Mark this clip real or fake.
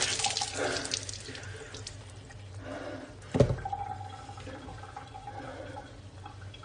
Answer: real